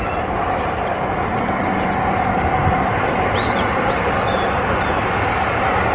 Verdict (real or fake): real